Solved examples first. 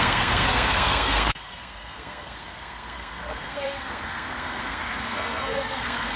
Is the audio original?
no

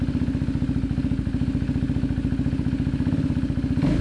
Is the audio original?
yes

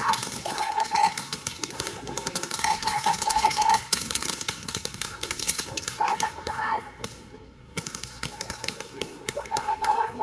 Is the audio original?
no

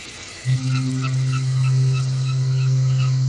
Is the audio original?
no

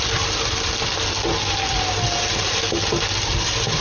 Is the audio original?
yes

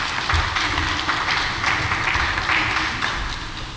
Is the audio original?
yes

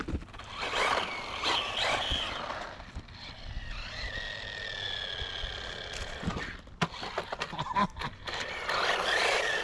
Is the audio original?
yes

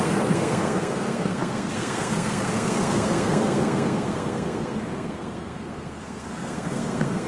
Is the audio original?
no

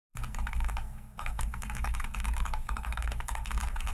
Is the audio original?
no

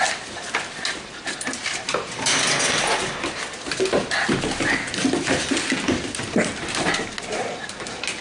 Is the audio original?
yes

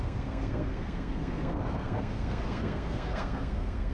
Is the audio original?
no